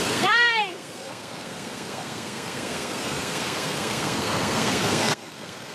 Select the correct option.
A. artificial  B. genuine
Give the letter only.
A